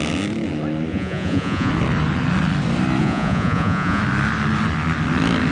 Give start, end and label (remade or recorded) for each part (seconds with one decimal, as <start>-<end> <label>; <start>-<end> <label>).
0.0-0.9 recorded; 0.9-1.7 remade; 1.7-3.0 recorded; 3.0-4.0 remade; 4.0-5.5 recorded

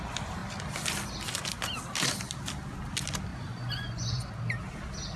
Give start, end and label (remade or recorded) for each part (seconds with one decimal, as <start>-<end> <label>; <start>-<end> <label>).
0.0-3.3 recorded; 3.3-4.3 remade; 4.3-5.2 recorded

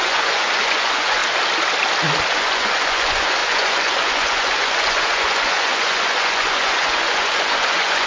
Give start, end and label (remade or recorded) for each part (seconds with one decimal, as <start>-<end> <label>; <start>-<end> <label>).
0.0-1.2 remade; 1.2-2.3 recorded; 2.3-8.1 remade

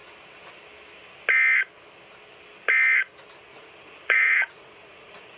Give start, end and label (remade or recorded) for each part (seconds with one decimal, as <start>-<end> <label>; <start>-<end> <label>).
0.0-3.5 recorded; 3.5-5.4 remade

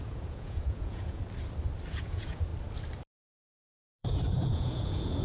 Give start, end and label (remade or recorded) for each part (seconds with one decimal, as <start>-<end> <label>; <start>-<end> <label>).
0.0-1.2 remade; 1.2-1.9 recorded; 1.9-2.5 remade; 2.5-4.0 recorded; 4.0-5.2 remade

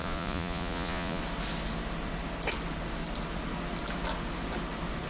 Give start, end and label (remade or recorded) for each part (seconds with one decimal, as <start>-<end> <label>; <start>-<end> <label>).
0.0-1.2 remade; 1.2-5.1 recorded